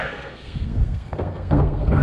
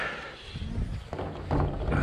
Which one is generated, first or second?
first